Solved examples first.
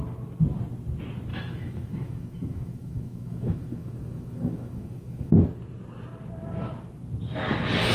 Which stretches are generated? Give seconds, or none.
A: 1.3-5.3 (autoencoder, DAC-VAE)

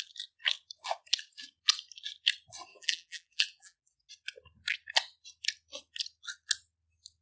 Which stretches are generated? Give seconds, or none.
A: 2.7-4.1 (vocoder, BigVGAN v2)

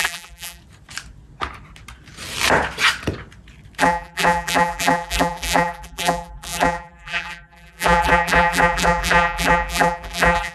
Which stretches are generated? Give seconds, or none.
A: 0.0-0.6 (vocoder, BigVGAN v2); 3.8-10.5

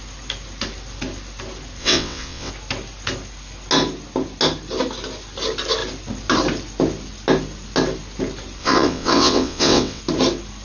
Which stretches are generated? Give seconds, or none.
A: 1.8-2.5 (vocoder, WaveNeXt); 8.6-10.0

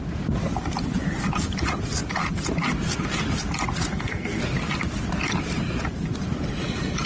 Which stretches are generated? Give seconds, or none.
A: 3.9-4.4 (codec, SNAC)

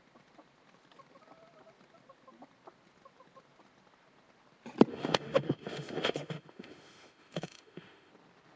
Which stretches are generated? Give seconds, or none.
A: 4.9-8.1 (autoencoder, DAC-VAE)

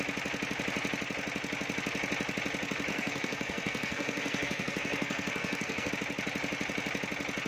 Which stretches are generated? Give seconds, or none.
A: 2.9-5.9 (codec, SNAC)

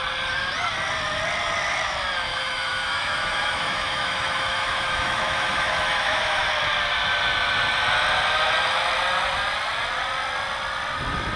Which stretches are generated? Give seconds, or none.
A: 2.3-6.5 (autoencoder, DAC-VAE)